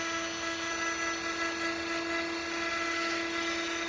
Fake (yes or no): no